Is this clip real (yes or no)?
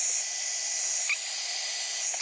yes